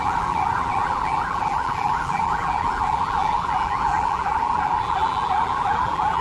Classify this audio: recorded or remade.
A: remade